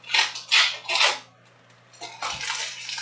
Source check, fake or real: real